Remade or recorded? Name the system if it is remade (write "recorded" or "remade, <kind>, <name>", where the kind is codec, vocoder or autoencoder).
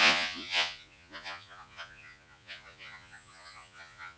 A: remade, vocoder, Vocos